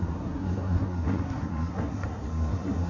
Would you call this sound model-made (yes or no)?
yes